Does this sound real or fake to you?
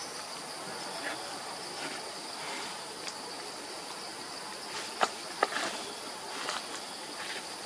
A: real